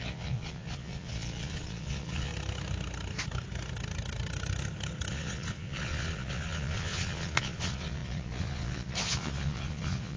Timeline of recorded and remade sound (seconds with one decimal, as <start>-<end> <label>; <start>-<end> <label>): 0.0-2.3 remade; 2.3-5.1 recorded; 5.1-10.2 remade